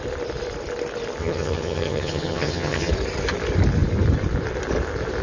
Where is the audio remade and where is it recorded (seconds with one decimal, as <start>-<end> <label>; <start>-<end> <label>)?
0.0-1.2 recorded; 1.2-2.9 remade; 2.9-5.2 recorded

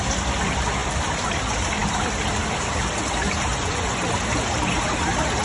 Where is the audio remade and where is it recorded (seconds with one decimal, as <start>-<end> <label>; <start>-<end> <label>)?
0.0-3.5 recorded; 3.5-4.0 remade; 4.0-5.4 recorded

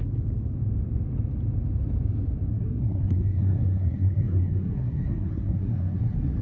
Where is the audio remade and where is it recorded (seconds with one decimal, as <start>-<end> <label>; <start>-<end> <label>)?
0.0-2.5 recorded; 2.5-6.4 remade

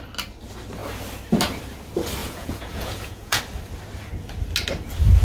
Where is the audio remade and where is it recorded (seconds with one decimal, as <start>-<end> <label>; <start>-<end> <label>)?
0.0-2.2 recorded; 2.2-3.4 remade; 3.4-5.2 recorded

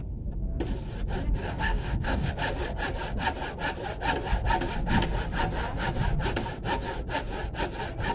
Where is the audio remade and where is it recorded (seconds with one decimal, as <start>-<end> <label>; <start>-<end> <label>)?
0.0-1.4 recorded; 1.4-2.3 remade; 2.3-8.1 recorded

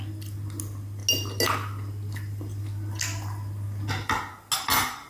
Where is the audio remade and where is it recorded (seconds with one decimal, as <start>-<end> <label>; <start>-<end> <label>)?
0.0-5.1 recorded

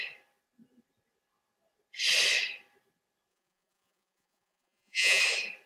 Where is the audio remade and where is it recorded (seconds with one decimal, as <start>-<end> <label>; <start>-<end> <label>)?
0.0-3.3 recorded; 3.3-5.2 remade; 5.2-5.7 recorded

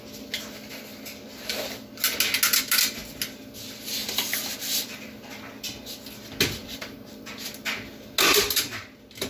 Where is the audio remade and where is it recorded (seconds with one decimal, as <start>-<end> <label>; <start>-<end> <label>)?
0.0-6.6 recorded; 6.6-7.3 remade; 7.3-9.3 recorded